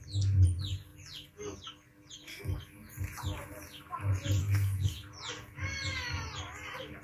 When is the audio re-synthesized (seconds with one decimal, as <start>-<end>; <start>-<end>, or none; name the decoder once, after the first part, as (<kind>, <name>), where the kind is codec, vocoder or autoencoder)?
4.4-4.9 (codec, SNAC)